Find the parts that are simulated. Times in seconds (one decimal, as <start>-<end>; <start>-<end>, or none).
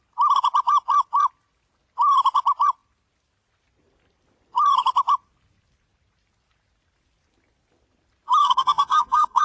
8.4-9.4